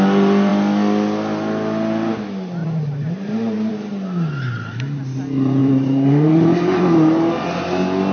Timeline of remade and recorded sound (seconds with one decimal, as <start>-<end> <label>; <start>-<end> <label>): 0.0-2.6 recorded; 2.6-3.7 remade; 3.7-5.6 recorded; 5.6-6.3 remade; 6.3-8.1 recorded